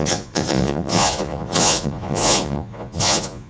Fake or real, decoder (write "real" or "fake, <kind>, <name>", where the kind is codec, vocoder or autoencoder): fake, vocoder, Vocos